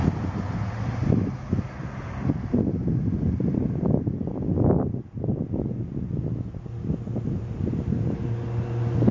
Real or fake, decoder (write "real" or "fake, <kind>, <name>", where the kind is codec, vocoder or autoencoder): real